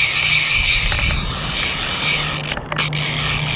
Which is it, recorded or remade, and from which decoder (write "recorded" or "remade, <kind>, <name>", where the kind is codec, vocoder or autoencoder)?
recorded